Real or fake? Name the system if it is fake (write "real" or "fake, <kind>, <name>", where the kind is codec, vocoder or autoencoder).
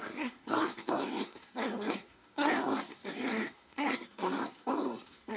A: fake, codec, SNAC